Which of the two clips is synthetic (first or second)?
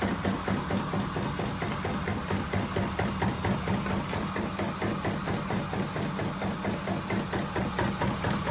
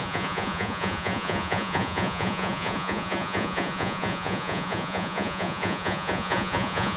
second